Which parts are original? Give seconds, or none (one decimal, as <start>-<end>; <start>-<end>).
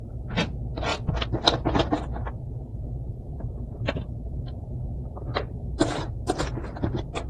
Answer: 0.0-2.7